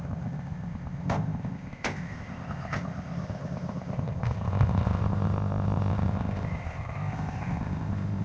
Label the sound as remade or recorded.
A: remade